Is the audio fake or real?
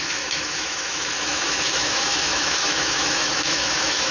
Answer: fake